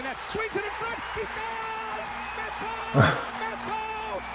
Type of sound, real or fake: real